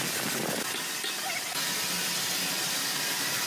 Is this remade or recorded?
recorded